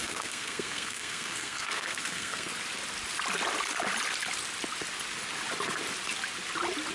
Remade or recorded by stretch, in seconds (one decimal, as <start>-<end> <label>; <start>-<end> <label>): 0.0-2.5 remade; 2.5-6.9 recorded